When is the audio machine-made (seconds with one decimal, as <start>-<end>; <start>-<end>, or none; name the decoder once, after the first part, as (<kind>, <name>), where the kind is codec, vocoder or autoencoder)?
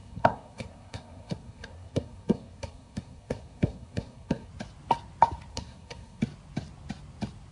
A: 0.0-4.5 (codec, SNAC); 5.5-6.2